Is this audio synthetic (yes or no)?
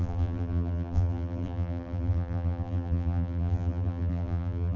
yes